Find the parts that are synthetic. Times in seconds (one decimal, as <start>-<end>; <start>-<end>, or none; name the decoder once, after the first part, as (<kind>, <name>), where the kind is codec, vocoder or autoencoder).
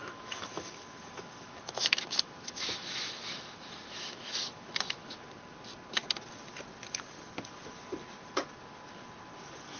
0.0-5.3 (autoencoder, DAC-VAE)